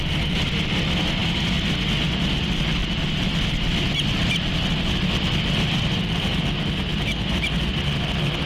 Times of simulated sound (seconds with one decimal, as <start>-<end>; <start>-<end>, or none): none